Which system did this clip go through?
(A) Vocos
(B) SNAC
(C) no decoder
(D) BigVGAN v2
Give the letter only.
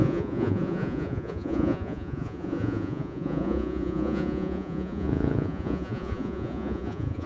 A